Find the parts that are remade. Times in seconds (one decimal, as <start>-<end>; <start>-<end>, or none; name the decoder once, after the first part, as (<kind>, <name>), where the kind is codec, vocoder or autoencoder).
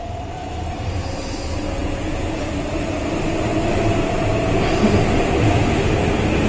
1.8-2.5 (vocoder, Vocos)